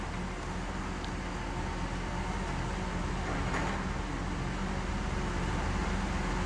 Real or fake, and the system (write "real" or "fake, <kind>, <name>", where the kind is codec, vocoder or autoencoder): real